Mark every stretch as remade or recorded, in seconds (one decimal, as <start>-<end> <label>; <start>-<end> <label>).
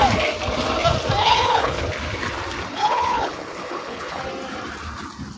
0.0-1.2 recorded; 1.2-1.8 remade; 1.8-2.7 recorded; 2.7-4.2 remade; 4.2-5.4 recorded